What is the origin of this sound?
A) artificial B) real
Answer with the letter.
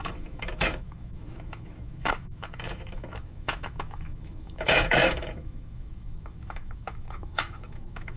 A